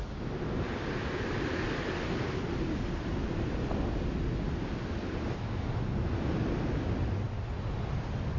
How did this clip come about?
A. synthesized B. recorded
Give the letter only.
B